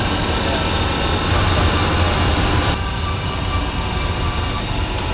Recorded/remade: recorded